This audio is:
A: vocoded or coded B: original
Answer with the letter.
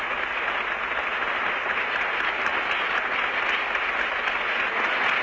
B